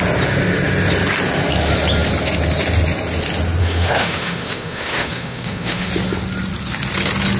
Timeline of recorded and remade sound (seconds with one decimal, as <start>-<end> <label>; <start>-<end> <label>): 0.0-3.6 recorded; 3.6-5.9 remade; 5.9-7.4 recorded